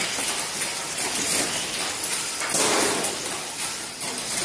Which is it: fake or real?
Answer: real